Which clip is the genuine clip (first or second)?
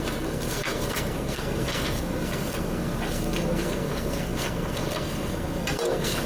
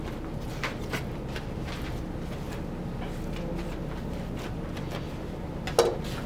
second